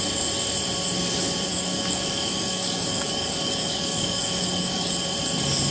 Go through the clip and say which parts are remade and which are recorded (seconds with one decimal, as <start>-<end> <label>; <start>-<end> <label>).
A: 0.0-1.5 recorded; 1.5-4.9 remade; 4.9-5.7 recorded